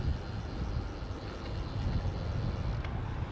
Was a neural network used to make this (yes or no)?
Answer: no